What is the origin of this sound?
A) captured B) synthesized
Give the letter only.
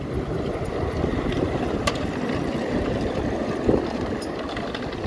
A